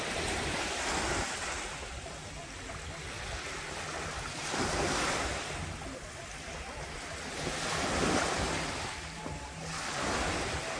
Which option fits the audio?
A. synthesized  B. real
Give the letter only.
B